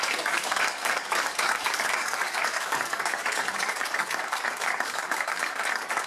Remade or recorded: remade